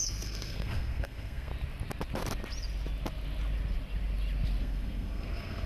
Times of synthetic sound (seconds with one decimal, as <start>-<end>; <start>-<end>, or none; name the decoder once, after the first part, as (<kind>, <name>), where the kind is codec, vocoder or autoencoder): 0.0-1.5 (codec, SNAC); 4.6-5.7